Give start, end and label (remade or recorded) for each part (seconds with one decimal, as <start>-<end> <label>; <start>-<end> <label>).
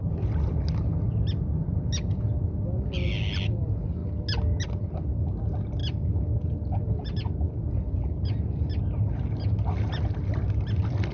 0.0-11.1 recorded